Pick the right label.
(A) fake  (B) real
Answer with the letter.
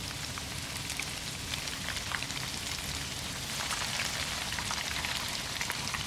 B